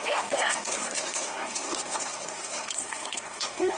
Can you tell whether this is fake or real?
fake